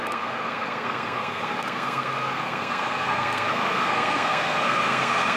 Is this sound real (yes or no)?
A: no